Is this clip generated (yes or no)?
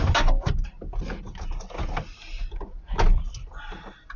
no